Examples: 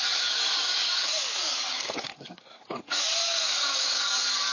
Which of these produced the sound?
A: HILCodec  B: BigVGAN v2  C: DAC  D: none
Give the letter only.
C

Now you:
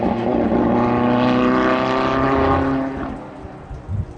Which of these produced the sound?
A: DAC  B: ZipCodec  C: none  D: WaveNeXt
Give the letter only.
C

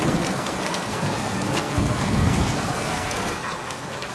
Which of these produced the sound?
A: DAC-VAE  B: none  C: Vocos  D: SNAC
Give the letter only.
D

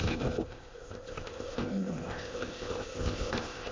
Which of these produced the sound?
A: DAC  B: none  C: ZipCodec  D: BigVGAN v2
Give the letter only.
C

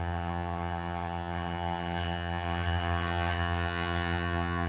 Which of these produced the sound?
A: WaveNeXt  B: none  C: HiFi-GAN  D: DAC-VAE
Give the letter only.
C